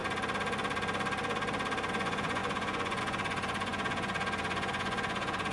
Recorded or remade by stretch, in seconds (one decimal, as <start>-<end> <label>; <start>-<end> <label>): 0.0-1.9 recorded; 1.9-5.5 remade